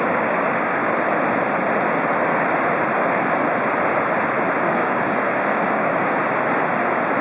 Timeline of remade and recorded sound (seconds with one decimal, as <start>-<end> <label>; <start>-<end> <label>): 0.0-0.8 remade; 0.8-4.6 recorded; 4.6-6.2 remade; 6.2-7.2 recorded